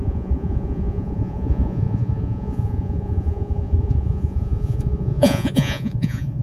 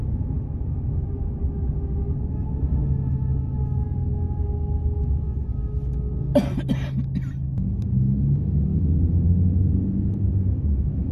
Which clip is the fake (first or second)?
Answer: first